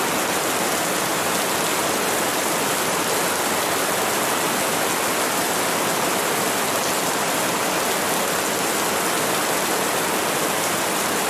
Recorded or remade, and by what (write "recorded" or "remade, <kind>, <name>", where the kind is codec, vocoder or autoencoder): recorded